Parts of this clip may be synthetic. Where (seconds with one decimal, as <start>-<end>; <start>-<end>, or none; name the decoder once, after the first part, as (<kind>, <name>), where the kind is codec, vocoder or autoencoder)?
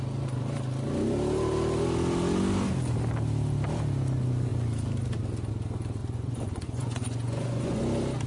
6.0-7.8 (vocoder, Vocos)